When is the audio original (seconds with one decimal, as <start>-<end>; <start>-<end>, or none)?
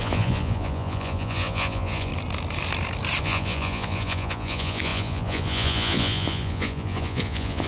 2.1-3.2